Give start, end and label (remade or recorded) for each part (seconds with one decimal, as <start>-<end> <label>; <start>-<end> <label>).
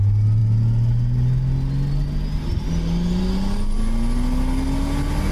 0.0-5.3 recorded